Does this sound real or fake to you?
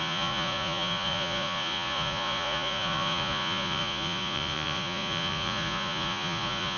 fake